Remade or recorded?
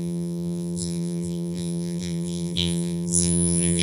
remade